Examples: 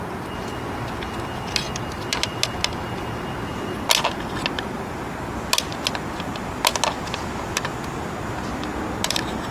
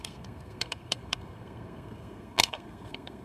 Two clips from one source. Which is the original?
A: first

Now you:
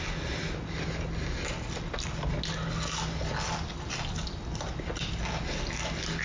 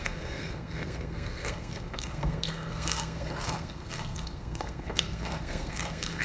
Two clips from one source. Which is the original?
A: first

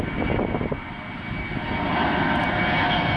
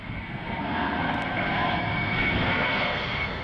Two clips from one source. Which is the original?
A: first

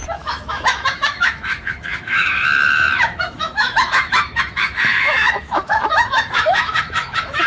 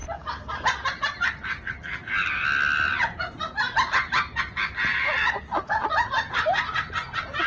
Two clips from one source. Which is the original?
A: second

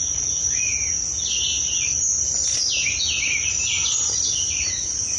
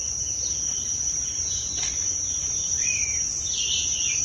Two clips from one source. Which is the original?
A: first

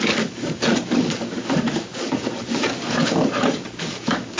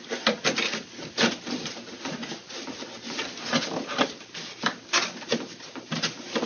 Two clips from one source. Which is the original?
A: second